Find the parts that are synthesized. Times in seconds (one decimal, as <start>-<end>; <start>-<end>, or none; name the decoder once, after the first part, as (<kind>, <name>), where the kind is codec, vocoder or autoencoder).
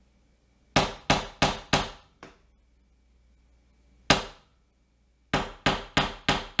none